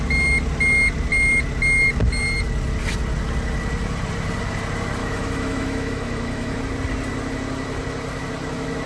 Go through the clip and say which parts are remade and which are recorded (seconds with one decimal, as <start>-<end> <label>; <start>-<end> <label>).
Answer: 0.0-5.0 recorded; 5.0-6.6 remade; 6.6-8.9 recorded